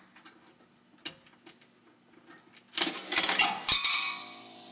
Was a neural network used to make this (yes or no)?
no